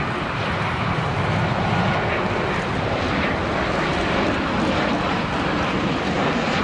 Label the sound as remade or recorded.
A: recorded